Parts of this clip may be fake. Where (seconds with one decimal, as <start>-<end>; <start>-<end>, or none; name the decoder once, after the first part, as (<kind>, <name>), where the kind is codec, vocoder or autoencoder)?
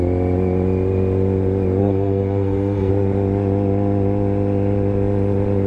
1.8-2.9 (codec, SNAC)